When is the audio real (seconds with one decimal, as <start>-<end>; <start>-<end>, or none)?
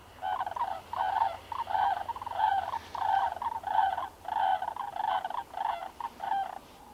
4.0-5.8